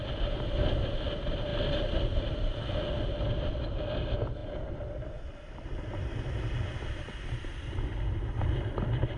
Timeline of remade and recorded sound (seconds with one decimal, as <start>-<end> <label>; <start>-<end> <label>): 0.0-1.5 recorded; 1.5-2.7 remade; 2.7-9.2 recorded